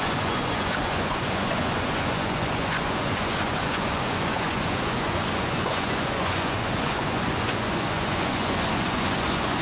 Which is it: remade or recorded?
remade